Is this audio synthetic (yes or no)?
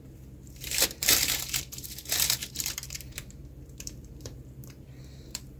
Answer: yes